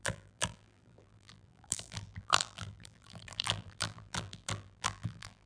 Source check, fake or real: fake